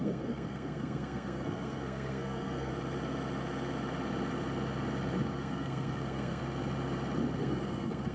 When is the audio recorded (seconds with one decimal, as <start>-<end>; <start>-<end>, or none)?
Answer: 2.7-5.4; 6.4-7.4